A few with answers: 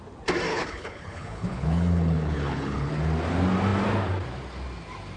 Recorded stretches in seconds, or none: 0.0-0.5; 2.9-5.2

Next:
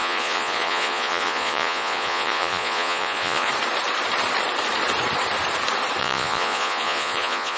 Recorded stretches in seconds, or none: 3.5-6.0